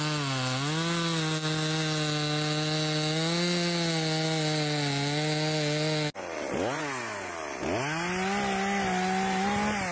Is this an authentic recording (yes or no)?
yes